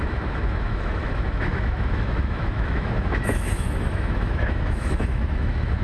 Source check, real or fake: fake